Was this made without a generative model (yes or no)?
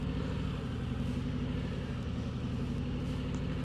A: yes